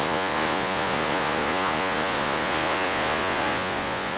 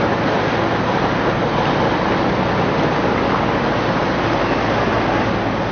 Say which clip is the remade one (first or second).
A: first